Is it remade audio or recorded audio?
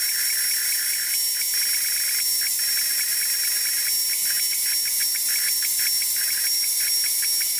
recorded